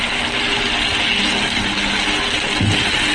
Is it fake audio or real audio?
real